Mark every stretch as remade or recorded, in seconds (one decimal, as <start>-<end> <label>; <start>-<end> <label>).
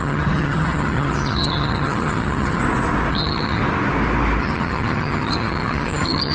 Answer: 0.0-2.6 remade; 2.6-3.1 recorded; 3.1-3.6 remade; 3.6-4.4 recorded; 4.4-6.3 remade